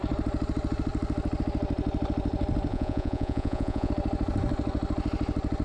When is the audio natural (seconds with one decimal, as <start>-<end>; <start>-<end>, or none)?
0.0-2.7; 3.9-5.6